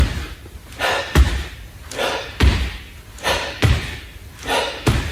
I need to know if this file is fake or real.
real